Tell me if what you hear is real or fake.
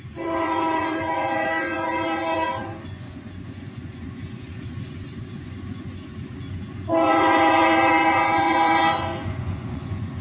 fake